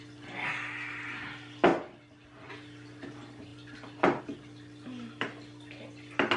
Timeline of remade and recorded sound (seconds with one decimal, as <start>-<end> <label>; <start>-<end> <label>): 0.0-6.4 recorded